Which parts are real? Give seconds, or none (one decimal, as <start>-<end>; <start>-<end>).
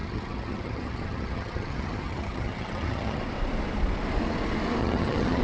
3.2-4.8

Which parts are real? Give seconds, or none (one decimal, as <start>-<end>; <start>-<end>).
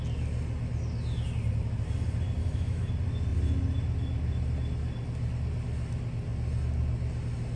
0.0-2.4; 2.9-7.6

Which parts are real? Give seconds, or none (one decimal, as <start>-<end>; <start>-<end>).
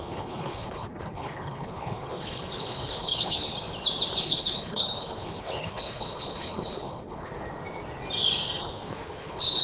3.5-4.2; 7.3-8.6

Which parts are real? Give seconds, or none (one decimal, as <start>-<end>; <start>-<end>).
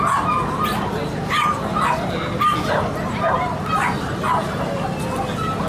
0.0-5.7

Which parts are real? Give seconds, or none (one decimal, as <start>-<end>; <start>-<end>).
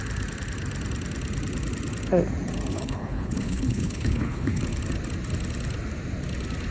0.0-2.7; 4.6-6.7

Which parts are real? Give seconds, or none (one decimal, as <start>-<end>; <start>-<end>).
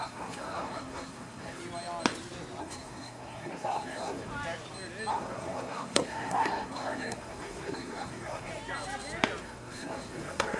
1.6-2.6; 4.3-5.1; 8.5-9.4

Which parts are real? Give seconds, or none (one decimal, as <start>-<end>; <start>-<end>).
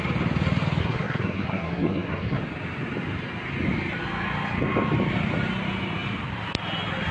0.0-0.8; 2.4-7.1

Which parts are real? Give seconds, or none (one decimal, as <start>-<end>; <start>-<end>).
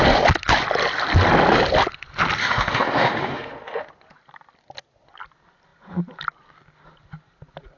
0.0-2.4; 3.9-7.8